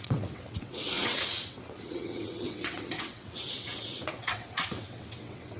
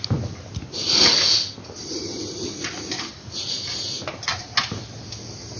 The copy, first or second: first